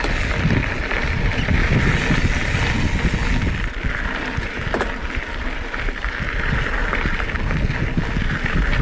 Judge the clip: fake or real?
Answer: real